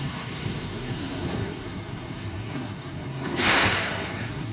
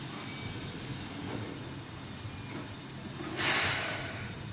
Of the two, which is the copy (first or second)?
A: first